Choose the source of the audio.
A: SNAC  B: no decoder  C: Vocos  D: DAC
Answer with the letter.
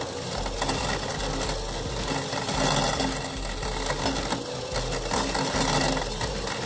B